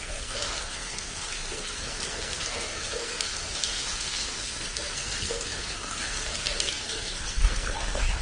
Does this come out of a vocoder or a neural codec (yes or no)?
yes